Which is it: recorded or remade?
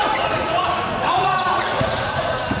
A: remade